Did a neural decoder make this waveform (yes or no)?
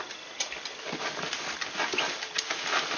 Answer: no